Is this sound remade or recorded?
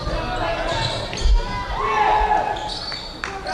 recorded